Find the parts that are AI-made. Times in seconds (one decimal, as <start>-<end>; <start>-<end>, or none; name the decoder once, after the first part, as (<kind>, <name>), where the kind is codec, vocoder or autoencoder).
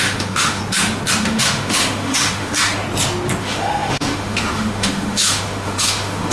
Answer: 0.0-0.6 (autoencoder, DAC-VAE); 1.2-2.5; 3.4-6.3